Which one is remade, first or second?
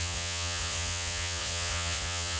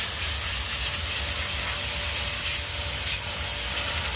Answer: first